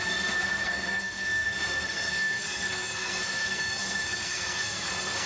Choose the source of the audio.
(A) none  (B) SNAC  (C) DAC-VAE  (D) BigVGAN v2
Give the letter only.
B